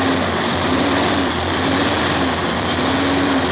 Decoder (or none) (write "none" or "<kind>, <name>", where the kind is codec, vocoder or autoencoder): vocoder, BigVGAN v2